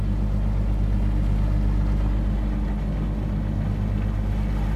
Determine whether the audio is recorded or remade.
recorded